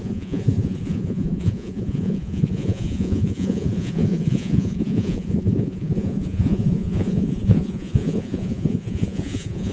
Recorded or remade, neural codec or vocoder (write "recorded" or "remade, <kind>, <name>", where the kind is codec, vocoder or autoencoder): remade, vocoder, Vocos